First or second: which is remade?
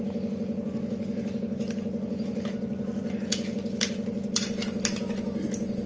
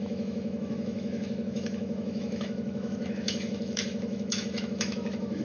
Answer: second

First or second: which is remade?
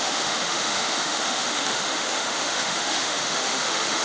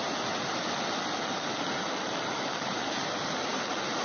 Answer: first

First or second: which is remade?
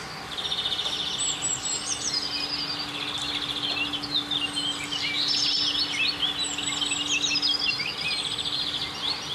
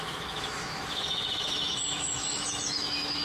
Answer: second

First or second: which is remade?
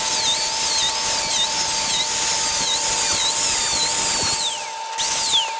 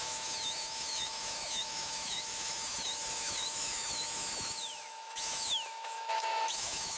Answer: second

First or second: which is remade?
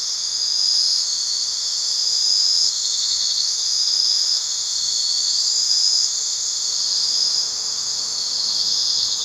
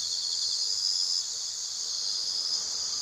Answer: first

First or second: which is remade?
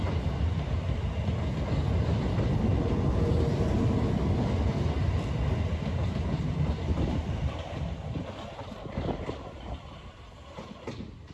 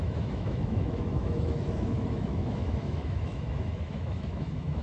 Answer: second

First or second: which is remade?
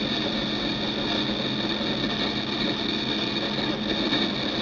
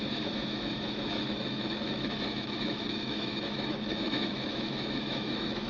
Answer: second